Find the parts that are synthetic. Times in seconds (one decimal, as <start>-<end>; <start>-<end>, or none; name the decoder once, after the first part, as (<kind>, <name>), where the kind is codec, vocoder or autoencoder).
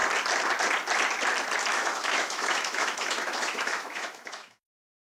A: 1.7-5.1 (autoencoder, DAC-VAE)